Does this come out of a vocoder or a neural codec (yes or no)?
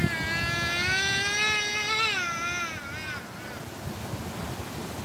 no